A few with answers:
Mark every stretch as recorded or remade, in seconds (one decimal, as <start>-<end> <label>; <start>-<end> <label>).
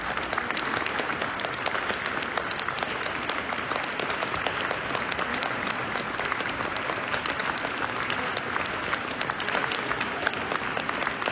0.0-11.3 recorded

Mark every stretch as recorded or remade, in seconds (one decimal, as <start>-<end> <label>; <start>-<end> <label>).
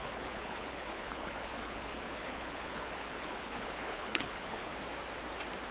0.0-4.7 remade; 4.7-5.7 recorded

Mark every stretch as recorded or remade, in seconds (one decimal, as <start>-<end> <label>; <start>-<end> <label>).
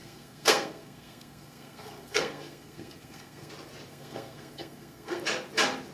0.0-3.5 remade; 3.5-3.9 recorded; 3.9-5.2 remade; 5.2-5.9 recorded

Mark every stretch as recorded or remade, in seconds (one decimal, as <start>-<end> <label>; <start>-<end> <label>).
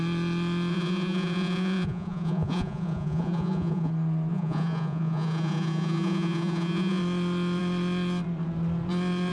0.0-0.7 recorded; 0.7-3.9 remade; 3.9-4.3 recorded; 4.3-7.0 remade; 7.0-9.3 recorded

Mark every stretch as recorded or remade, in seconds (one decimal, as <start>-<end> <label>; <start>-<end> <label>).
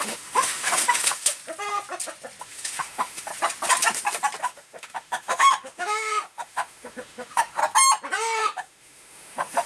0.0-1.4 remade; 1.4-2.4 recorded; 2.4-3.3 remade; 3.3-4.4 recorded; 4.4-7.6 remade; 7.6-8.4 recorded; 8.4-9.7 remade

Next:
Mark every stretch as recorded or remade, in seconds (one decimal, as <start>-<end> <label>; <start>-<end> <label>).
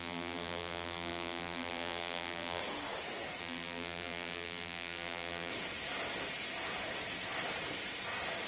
0.0-2.6 remade; 2.6-3.4 recorded; 3.4-5.5 remade; 5.5-8.5 recorded